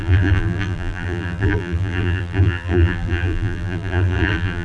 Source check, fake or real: fake